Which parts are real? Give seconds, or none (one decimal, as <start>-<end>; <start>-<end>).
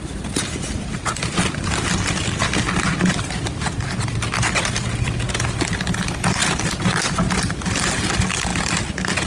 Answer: 0.0-9.3